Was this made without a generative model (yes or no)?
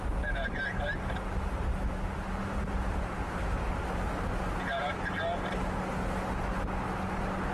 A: yes